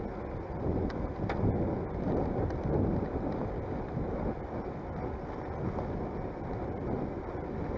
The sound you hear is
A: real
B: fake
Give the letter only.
A